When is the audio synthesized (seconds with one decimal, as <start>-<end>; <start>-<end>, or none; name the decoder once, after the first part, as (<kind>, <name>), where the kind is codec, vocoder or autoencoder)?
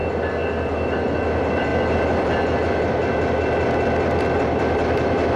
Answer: none